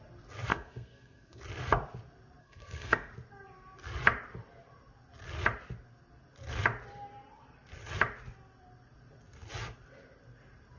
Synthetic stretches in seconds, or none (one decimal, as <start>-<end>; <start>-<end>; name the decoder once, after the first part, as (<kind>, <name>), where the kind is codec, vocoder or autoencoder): 0.5-1.4 (codec, SNAC); 2.4-3.1